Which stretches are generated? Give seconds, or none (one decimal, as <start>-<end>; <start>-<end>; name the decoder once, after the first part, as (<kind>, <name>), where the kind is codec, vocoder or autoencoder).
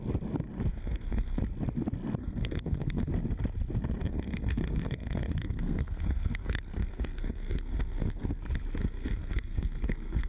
0.7-1.4 (codec, SNAC); 2.2-3.1; 4.0-8.4; 8.8-10.3